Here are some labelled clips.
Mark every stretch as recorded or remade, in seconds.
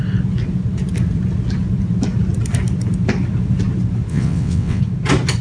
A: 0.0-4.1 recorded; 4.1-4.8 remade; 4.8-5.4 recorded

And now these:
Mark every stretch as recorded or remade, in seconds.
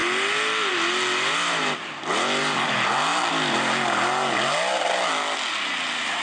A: 0.0-6.2 recorded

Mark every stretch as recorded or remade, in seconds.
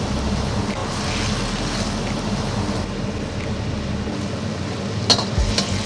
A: 0.0-5.9 recorded